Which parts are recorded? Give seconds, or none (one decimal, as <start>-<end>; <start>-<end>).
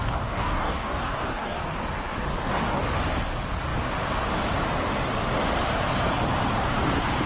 1.6-2.3; 2.8-7.3